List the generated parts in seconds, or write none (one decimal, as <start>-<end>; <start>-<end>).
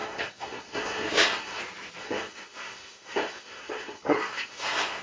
0.0-1.6; 2.0-5.0